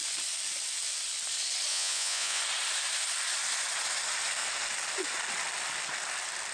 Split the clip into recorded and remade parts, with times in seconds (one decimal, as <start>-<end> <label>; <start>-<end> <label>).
0.0-1.7 recorded; 1.7-2.4 remade; 2.4-6.5 recorded